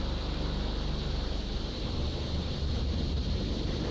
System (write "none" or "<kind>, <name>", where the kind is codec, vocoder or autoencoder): none